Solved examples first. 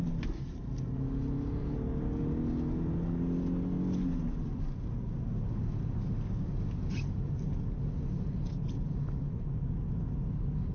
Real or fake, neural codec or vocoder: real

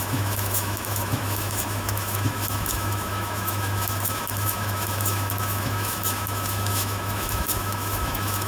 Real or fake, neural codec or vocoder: fake, autoencoder, DAC-VAE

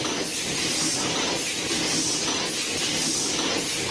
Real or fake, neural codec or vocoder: real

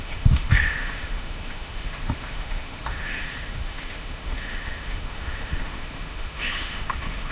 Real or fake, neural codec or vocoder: fake, autoencoder, DAC-VAE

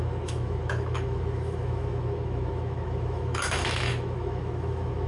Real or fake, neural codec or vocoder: fake, autoencoder, DAC-VAE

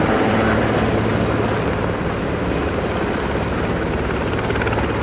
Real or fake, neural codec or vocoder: real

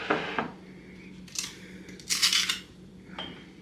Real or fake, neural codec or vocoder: real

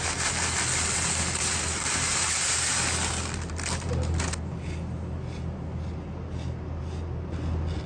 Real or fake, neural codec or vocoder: real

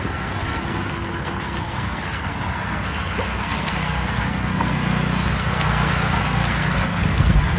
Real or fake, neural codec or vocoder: fake, codec, SNAC